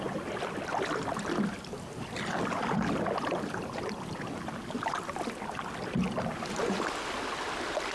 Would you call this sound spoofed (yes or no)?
no